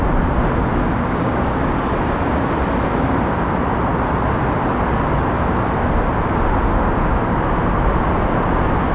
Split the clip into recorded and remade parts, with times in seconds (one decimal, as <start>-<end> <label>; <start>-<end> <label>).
0.0-0.7 recorded; 0.7-1.9 remade; 1.9-6.7 recorded; 6.7-7.4 remade; 7.4-8.9 recorded